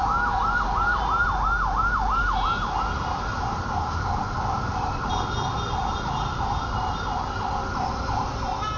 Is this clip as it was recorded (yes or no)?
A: yes